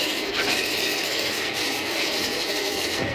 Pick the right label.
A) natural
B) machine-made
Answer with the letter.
B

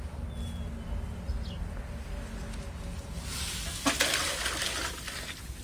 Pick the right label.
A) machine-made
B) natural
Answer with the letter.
B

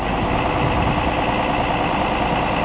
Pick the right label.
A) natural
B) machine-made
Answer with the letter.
A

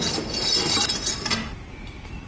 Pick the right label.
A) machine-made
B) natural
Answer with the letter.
A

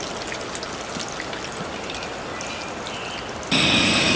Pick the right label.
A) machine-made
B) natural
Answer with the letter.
B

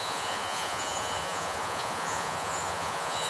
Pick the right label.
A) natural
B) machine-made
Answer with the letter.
B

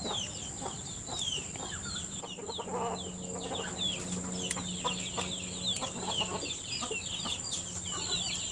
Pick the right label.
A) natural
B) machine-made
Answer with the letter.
A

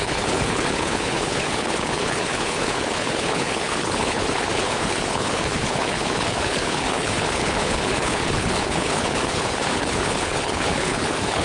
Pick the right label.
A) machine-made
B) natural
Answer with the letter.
A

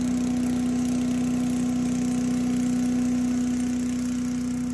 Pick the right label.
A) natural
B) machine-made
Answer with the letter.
A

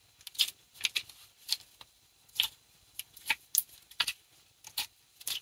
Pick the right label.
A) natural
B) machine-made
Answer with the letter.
A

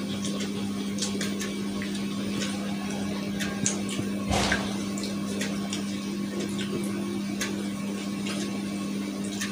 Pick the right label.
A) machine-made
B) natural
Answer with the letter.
B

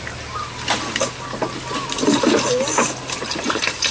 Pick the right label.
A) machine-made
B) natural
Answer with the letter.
B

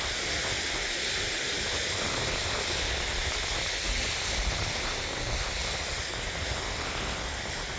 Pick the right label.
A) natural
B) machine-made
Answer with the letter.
A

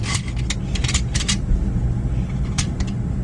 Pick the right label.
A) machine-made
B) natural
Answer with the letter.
B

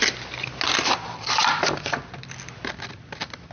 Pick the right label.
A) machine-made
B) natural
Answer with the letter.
B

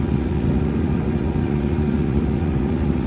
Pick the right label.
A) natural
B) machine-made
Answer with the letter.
B